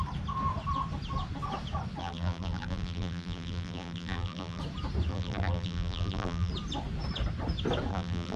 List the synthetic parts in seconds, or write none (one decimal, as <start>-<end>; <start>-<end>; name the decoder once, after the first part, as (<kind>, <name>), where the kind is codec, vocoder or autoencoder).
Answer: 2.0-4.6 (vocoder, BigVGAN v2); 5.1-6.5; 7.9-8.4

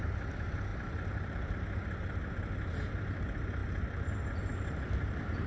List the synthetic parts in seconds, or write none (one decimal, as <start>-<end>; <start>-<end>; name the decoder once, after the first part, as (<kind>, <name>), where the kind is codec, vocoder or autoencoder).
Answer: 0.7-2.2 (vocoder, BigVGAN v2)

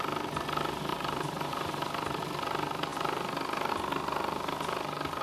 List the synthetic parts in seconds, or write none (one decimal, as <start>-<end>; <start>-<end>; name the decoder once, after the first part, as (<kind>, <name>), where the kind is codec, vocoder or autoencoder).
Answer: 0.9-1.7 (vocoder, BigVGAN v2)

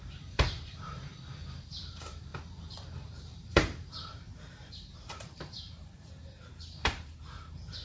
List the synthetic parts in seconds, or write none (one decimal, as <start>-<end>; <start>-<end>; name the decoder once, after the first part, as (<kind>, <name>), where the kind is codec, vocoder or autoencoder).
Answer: 0.0-1.1 (vocoder, BigVGAN v2); 1.6-2.3; 2.9-7.8